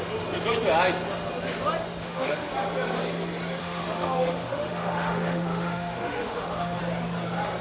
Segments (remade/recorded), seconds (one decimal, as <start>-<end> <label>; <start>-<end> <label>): 0.0-2.0 recorded; 2.0-2.5 remade; 2.5-3.6 recorded; 3.6-6.8 remade; 6.8-7.6 recorded